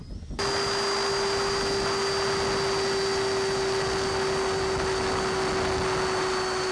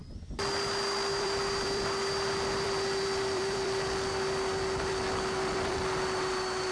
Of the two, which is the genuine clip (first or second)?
first